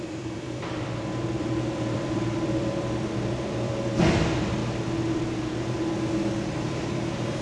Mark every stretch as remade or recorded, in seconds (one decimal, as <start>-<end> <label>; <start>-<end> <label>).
0.0-4.6 remade; 4.6-6.5 recorded; 6.5-7.4 remade